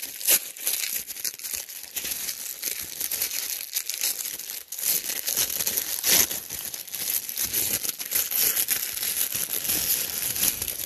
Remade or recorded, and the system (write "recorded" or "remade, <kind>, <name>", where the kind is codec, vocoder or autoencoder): recorded